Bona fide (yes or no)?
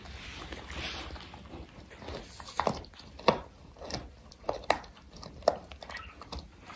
yes